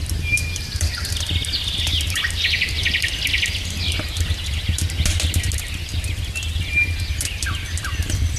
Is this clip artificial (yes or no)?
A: no